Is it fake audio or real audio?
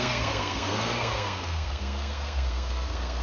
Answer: fake